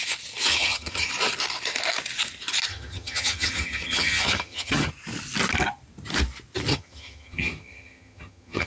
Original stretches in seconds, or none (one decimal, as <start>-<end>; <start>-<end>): 0.0-0.5; 1.1-2.7; 4.9-6.7